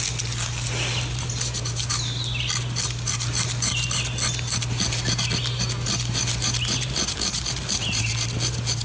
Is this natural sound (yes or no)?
yes